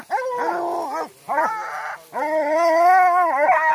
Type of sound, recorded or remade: recorded